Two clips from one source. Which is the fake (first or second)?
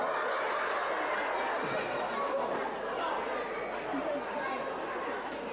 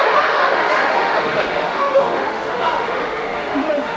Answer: second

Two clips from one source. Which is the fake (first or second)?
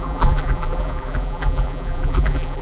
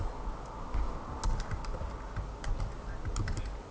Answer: first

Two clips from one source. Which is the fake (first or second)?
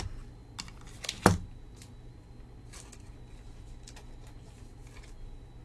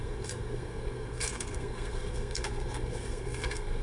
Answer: second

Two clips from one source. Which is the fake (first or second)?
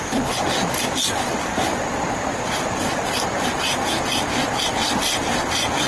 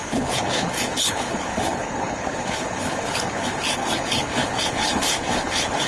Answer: second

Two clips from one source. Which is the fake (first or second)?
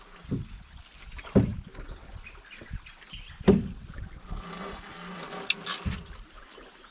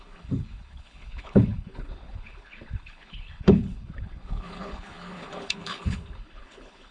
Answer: second